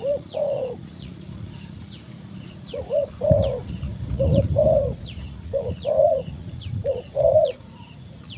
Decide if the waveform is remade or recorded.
remade